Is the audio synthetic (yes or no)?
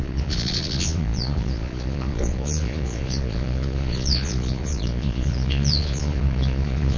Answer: yes